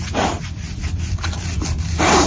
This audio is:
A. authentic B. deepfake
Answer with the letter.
A